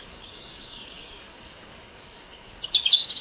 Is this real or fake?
fake